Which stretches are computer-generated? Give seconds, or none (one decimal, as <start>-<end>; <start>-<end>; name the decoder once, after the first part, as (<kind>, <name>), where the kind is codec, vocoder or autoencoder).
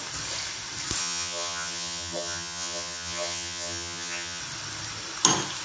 1.0-4.4 (vocoder, HiFi-GAN)